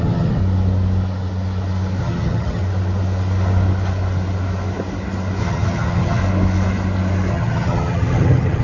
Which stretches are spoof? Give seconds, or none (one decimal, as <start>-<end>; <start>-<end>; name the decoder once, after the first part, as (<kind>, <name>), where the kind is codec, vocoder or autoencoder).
0.0-0.4 (vocoder, HiFi-GAN); 2.0-2.6; 5.4-6.2; 7.3-8.6